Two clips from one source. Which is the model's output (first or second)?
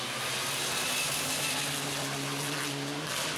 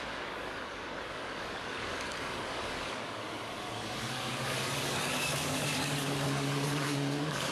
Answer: second